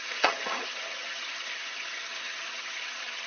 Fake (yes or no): yes